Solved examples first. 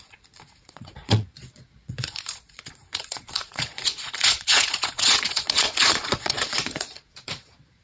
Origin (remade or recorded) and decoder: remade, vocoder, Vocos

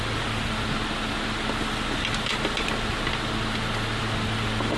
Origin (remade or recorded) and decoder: recorded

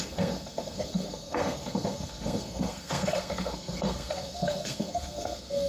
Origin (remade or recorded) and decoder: remade, codec, SNAC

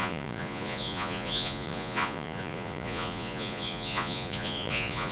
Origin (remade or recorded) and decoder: remade, vocoder, Vocos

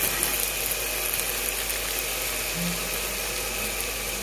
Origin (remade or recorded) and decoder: recorded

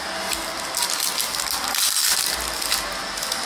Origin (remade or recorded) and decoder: recorded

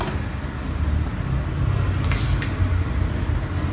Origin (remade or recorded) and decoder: recorded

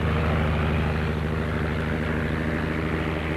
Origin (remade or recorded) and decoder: recorded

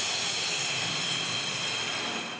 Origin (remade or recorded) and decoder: recorded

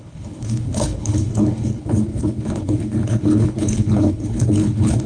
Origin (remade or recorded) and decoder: remade, codec, HILCodec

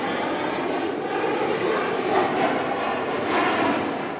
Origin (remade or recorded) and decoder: recorded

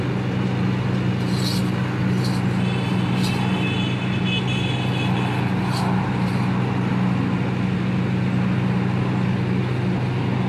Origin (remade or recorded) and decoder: recorded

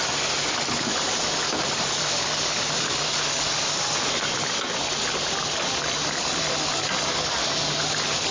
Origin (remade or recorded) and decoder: recorded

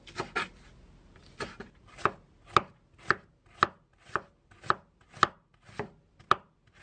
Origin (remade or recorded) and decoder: recorded